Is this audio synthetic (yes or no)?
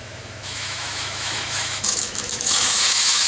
yes